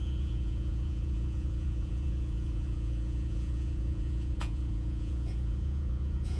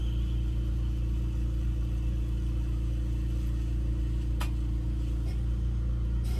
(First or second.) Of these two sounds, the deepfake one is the first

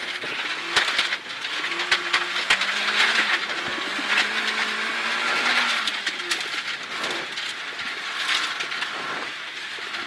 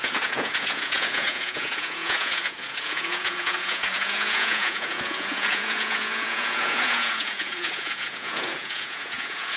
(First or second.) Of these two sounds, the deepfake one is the second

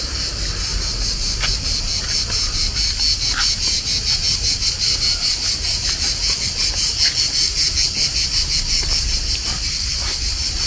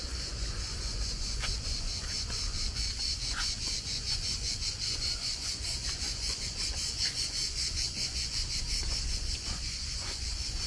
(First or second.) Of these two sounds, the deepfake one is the second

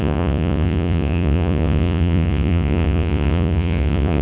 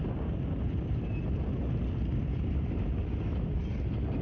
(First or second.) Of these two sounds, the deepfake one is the first